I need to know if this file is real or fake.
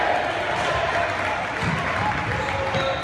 real